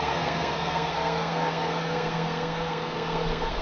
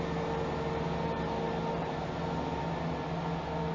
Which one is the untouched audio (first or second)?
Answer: second